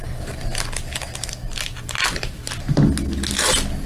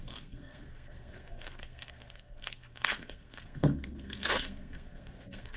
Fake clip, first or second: second